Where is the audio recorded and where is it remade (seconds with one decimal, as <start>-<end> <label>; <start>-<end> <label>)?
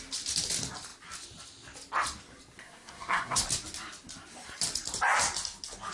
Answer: 0.0-2.6 recorded; 2.6-3.4 remade; 3.4-5.9 recorded